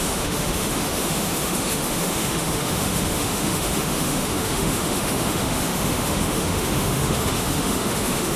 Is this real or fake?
fake